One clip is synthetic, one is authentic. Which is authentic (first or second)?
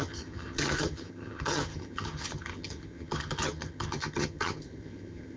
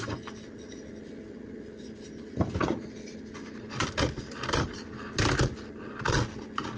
second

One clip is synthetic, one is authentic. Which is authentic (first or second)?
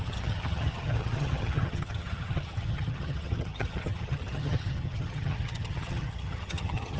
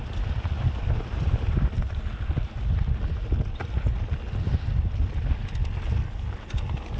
second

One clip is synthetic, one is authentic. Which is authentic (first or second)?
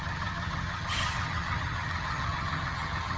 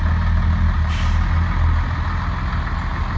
second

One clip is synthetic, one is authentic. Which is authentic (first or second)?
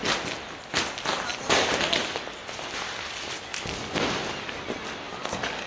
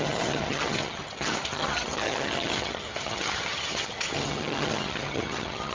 first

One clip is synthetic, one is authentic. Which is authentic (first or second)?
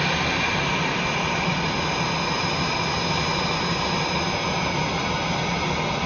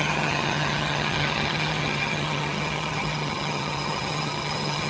first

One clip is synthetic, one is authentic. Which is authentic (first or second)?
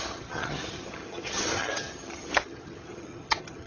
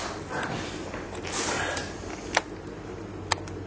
second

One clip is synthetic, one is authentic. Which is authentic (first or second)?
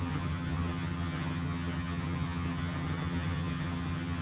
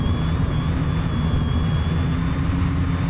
second